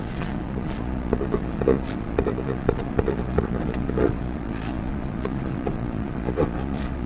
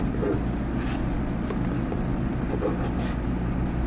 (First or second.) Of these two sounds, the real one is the second